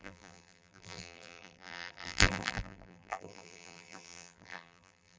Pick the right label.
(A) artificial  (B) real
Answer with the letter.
A